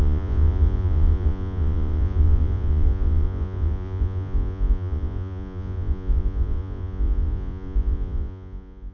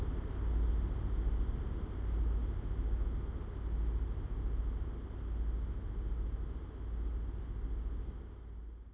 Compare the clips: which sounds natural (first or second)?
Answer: second